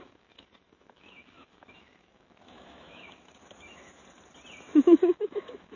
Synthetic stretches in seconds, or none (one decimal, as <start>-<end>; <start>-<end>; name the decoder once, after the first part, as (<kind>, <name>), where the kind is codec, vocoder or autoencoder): 0.0-4.0 (autoencoder, DAC-VAE); 4.6-5.8